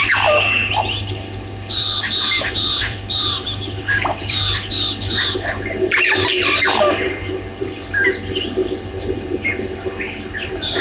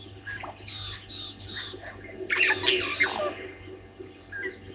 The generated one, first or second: first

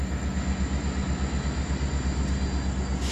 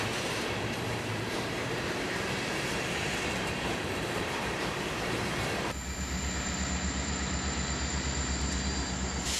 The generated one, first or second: second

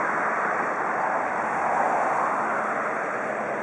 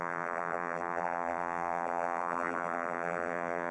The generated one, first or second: second